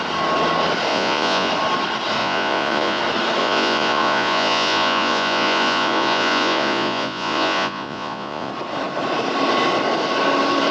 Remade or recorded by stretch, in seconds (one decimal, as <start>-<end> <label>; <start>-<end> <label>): 0.0-0.9 recorded; 0.9-1.5 remade; 1.5-2.2 recorded; 2.2-3.0 remade; 3.0-3.4 recorded; 3.4-8.5 remade; 8.5-10.7 recorded